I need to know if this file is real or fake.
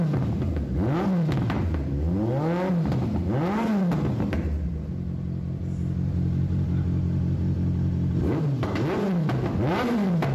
real